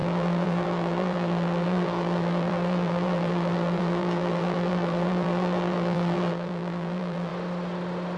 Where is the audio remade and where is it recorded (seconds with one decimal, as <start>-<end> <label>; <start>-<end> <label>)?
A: 0.0-7.3 remade; 7.3-8.2 recorded